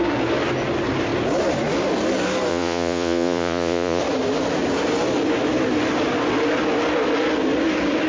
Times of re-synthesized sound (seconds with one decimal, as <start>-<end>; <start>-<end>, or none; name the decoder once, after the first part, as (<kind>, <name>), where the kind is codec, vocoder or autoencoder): 2.5-4.0 (vocoder, Vocos)